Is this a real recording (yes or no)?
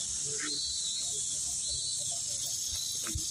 yes